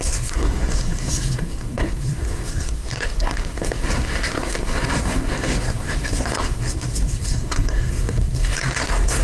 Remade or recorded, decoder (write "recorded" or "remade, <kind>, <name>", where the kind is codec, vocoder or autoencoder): remade, codec, SNAC